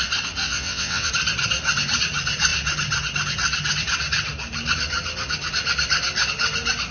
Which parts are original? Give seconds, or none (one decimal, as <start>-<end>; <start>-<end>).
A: 0.0-0.4; 1.1-6.9